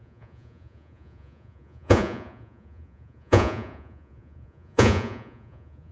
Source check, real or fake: fake